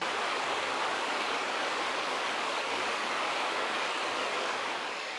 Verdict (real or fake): fake